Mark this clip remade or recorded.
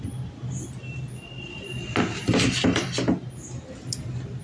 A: recorded